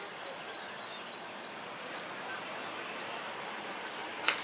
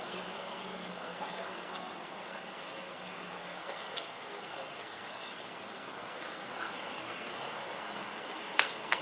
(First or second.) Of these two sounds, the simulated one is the second